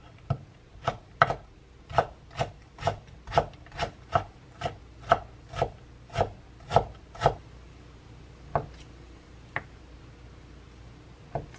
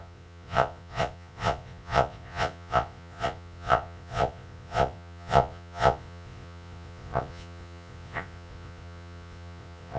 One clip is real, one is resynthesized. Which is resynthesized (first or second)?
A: second